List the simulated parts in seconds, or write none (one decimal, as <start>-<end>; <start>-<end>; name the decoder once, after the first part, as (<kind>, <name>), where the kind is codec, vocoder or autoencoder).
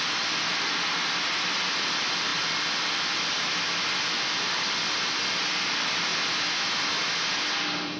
0.0-6.1 (vocoder, BigVGAN v2); 7.6-8.0